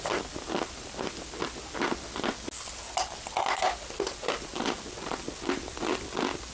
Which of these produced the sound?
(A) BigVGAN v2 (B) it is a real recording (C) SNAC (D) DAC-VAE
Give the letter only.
B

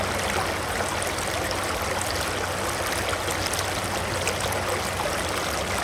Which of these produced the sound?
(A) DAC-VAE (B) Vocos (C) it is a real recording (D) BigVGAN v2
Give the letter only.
C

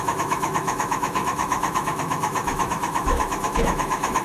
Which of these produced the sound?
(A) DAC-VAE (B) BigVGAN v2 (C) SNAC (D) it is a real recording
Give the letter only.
A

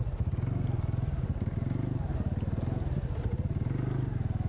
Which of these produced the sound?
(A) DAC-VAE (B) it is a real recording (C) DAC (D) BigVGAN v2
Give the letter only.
B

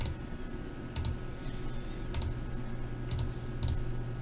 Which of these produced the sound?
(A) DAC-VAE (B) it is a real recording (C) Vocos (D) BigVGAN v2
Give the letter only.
B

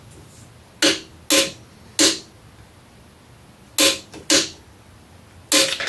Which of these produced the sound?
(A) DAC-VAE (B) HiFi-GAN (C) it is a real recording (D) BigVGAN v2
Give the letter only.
C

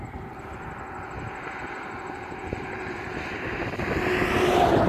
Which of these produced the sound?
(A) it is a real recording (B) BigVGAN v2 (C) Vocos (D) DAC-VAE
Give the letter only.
A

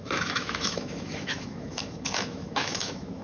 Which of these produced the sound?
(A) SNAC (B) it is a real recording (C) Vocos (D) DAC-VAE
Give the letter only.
D